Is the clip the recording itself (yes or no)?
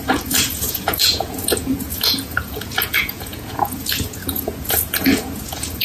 no